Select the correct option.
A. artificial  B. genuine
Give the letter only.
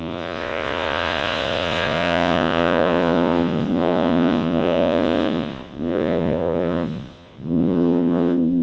A